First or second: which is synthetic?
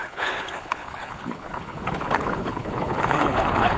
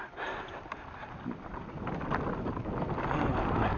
first